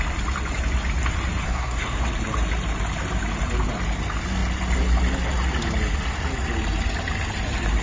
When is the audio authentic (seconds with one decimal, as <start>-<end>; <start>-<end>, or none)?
0.0-1.4; 2.0-7.8